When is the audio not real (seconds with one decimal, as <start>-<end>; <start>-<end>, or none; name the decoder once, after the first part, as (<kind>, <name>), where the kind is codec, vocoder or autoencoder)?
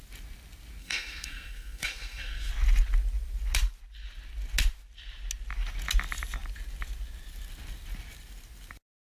0.8-2.5 (codec, SNAC)